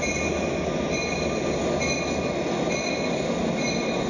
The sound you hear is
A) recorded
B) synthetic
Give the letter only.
A